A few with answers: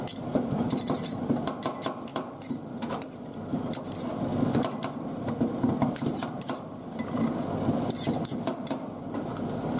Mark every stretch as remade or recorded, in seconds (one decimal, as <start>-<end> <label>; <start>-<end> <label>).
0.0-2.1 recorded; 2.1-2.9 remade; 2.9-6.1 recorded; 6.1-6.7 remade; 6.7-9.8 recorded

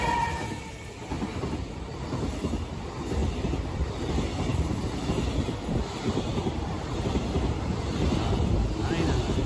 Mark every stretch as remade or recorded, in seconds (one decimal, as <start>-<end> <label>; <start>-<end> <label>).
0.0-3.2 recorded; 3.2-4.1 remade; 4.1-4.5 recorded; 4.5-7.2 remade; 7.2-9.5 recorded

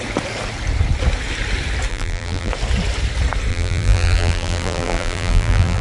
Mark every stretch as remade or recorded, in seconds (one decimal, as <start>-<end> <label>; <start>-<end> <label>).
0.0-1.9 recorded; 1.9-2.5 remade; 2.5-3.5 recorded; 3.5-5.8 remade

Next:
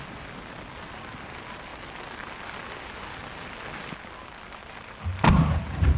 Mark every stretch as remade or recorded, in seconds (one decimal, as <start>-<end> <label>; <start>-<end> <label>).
0.0-6.0 recorded

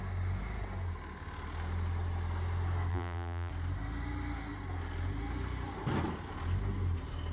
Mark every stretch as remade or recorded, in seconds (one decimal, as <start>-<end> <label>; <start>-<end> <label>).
0.0-2.9 recorded; 2.9-3.5 remade; 3.5-7.3 recorded

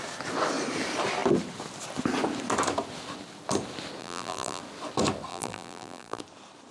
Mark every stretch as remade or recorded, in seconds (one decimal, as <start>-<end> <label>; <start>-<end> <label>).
0.0-4.0 recorded; 4.0-4.6 remade; 4.6-5.3 recorded; 5.3-6.2 remade; 6.2-6.7 recorded

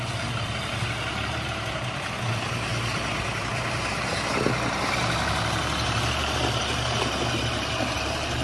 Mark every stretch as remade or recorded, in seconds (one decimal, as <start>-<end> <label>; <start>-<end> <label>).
0.0-2.7 remade; 2.7-6.2 recorded; 6.2-8.4 remade